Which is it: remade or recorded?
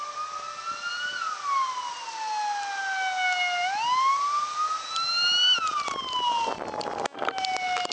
recorded